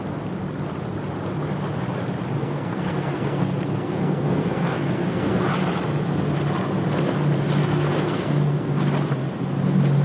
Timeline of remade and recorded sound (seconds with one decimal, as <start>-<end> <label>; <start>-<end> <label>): 0.0-2.4 recorded; 2.4-5.4 remade; 5.4-7.6 recorded; 7.6-8.7 remade; 8.7-10.0 recorded